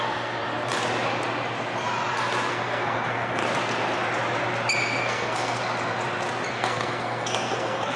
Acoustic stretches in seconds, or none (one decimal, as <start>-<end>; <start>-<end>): 0.4-2.5; 3.4-5.0; 5.6-6.5